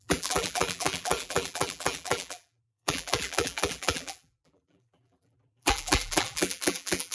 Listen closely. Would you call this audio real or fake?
fake